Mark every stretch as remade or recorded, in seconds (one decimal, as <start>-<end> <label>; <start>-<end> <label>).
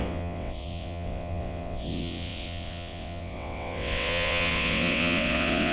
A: 0.0-5.7 remade